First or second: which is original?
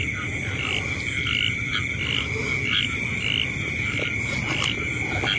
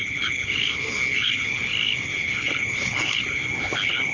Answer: first